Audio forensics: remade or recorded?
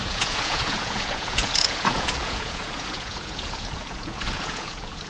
remade